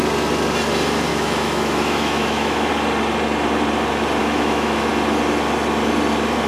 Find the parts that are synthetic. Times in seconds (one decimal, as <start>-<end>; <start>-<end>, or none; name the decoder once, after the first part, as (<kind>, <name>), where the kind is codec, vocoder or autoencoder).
1.1-2.7 (autoencoder, DAC-VAE); 4.2-4.9